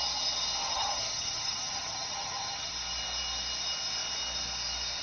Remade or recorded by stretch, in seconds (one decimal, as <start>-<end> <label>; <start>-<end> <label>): 0.0-0.6 recorded; 0.6-2.7 remade; 2.7-5.0 recorded